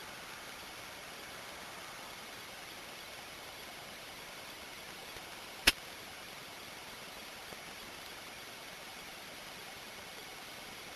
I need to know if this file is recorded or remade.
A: recorded